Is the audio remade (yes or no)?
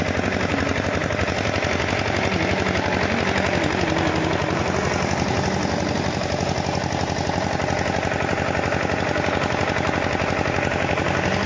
no